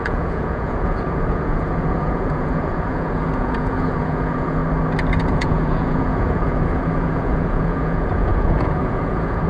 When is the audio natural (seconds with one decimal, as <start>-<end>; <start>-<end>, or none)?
4.6-5.2